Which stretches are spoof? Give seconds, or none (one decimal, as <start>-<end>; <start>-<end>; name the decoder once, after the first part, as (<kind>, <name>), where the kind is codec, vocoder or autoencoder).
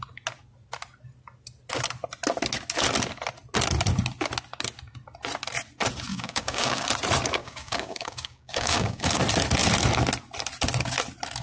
6.1-6.9 (codec, DAC); 7.4-9.2